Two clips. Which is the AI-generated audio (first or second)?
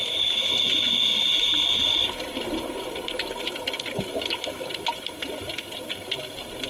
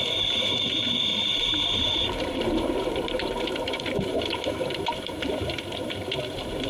second